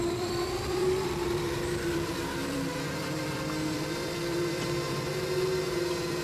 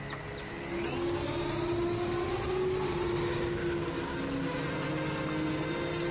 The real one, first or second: second